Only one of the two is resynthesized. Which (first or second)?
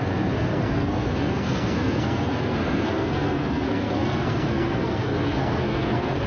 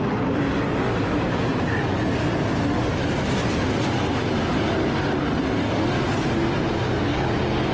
first